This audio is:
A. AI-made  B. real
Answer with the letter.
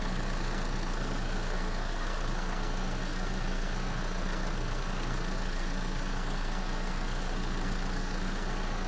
A